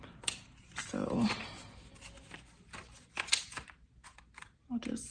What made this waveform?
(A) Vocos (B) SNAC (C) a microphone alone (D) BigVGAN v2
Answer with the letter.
C